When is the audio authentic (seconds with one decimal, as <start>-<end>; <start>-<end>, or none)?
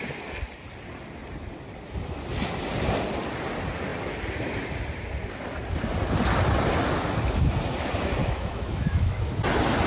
0.0-8.2; 9.3-9.9